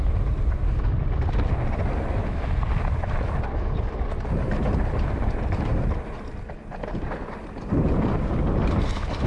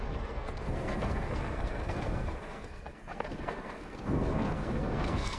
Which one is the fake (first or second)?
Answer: second